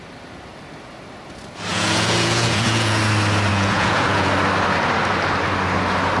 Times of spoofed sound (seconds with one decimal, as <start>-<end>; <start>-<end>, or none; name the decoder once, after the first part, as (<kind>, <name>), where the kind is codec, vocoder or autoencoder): 1.7-3.0 (vocoder, Vocos); 3.5-4.3